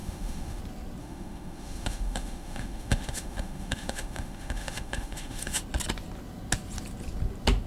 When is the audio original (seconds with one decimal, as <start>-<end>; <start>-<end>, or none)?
0.6-1.0; 5.6-7.7